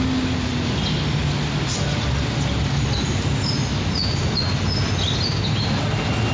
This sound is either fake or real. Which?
real